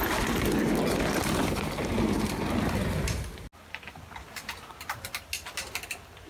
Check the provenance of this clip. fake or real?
real